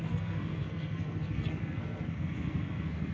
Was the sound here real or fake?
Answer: fake